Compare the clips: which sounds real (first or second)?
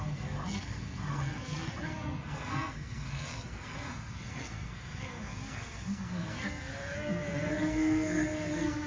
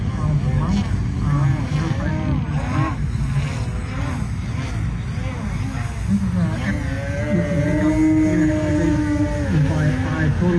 second